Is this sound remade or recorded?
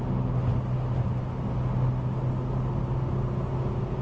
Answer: recorded